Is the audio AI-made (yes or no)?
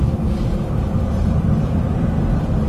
yes